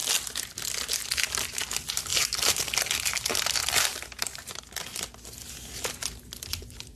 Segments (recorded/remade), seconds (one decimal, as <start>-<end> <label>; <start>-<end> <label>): 0.0-3.6 recorded; 3.6-4.6 remade; 4.6-7.0 recorded